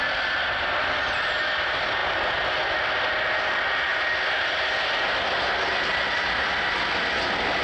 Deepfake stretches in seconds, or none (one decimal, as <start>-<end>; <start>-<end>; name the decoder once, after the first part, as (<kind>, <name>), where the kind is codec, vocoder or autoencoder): none

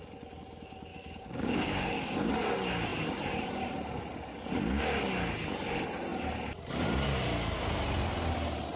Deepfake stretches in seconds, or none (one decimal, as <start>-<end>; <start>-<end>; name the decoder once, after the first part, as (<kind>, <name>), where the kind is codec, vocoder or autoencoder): 0.9-2.3 (codec, DAC)

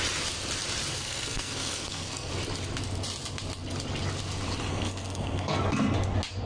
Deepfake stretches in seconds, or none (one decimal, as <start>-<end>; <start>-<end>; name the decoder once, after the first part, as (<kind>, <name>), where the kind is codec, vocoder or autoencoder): 0.9-2.3 (codec, SNAC); 4.7-5.6

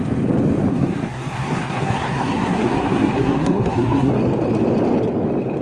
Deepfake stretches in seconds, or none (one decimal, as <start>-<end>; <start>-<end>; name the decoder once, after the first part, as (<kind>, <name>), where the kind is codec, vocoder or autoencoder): 0.7-4.1 (codec, SNAC)

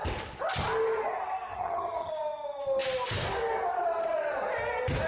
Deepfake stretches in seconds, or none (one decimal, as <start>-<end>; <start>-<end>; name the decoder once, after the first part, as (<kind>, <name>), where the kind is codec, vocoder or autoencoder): 1.5-2.1 (vocoder, HiFi-GAN)